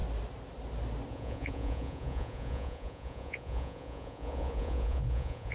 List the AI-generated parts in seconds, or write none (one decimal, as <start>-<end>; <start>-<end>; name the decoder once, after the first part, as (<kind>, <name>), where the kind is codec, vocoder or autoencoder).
1.1-5.5 (vocoder, Vocos)